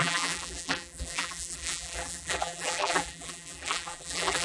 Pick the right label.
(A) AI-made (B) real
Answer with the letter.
A